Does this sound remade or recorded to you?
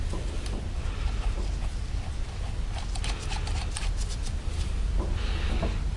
recorded